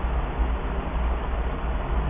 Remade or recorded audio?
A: recorded